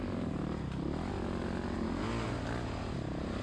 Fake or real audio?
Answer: real